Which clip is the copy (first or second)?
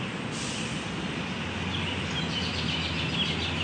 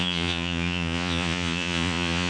second